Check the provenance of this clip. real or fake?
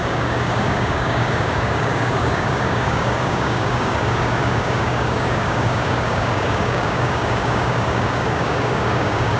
fake